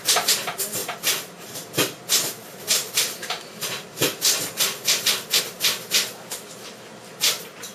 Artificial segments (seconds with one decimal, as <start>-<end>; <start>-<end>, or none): 0.8-5.4